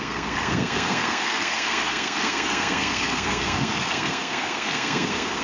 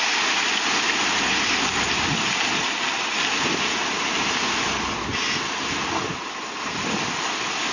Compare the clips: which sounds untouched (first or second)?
second